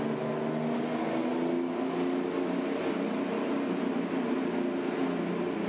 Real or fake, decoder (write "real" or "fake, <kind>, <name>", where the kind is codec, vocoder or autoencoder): real